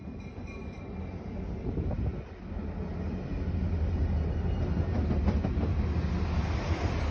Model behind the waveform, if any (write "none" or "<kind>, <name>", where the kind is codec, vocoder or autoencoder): none